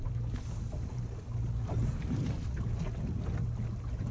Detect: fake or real real